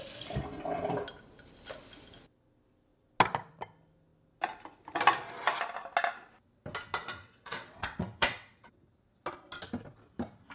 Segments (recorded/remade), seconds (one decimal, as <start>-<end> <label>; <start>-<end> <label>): 0.0-7.0 recorded; 7.0-8.9 remade; 8.9-10.5 recorded